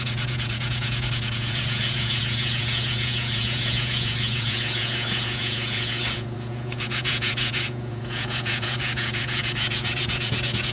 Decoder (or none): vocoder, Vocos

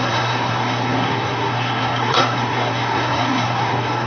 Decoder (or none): codec, SNAC